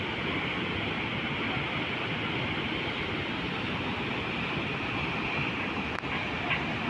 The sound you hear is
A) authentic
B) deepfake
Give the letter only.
A